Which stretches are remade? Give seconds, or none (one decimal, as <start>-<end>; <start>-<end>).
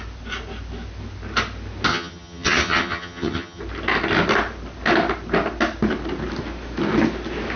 1.9-3.6